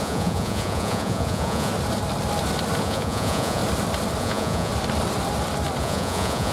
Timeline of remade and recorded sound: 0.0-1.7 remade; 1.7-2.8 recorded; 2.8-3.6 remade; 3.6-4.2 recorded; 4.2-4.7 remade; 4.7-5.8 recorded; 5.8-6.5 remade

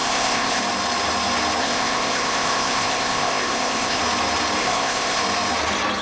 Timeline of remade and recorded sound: 0.0-0.6 remade; 0.6-1.6 recorded; 1.6-4.0 remade; 4.0-4.6 recorded; 4.6-5.2 remade; 5.2-6.0 recorded